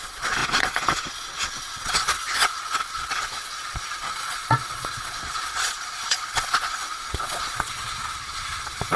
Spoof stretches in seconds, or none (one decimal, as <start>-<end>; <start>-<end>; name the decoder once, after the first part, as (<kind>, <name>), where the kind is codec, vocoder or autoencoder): 0.0-9.0 (vocoder, Vocos)